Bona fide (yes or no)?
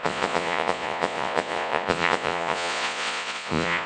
no